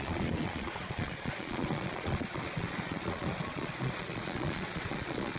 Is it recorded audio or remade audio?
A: remade